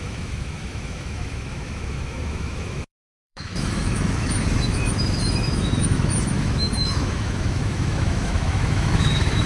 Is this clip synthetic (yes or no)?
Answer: yes